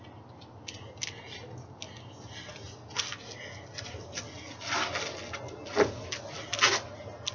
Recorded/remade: recorded